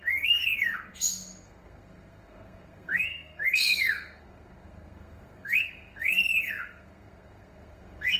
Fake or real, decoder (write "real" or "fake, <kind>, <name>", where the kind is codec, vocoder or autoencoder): fake, codec, SNAC